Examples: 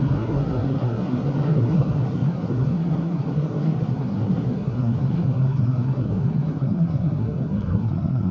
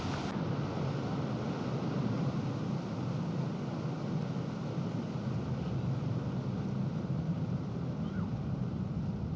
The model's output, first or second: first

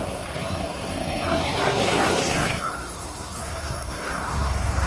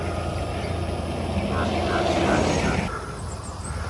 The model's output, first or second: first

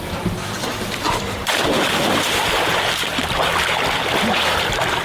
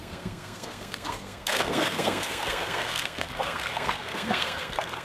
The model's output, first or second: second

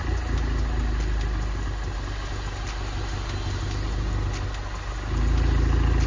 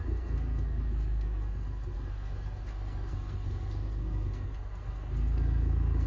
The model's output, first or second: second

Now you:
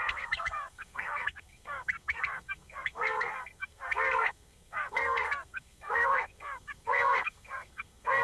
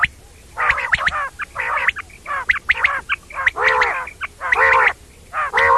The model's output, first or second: first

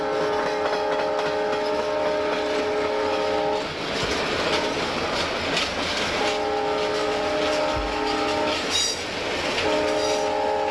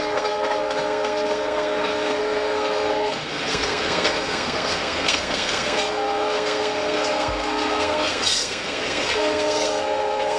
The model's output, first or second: second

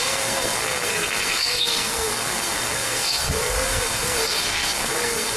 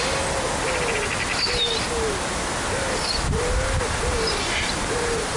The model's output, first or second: first